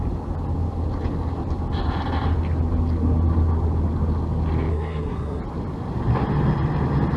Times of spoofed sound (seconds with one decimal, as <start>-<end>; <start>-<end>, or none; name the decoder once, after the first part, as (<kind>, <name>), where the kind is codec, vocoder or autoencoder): 4.7-5.4 (codec, SNAC)